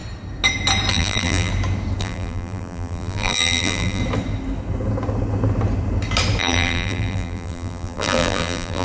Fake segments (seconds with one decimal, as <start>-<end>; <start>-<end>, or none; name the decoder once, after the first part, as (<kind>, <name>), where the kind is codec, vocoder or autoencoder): 0.9-1.5 (vocoder, BigVGAN v2); 2.0-4.0; 6.4-8.8